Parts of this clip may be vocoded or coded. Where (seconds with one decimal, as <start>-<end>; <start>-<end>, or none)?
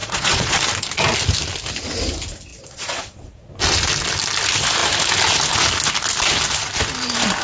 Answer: 0.0-0.6; 2.5-3.5